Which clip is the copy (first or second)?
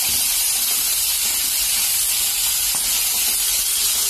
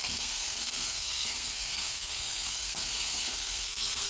second